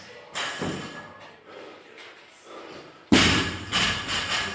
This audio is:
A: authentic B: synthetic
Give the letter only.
A